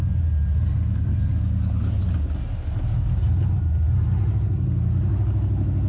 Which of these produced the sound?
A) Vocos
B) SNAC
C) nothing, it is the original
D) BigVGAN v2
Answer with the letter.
C